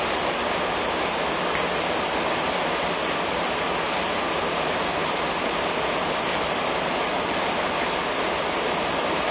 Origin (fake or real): real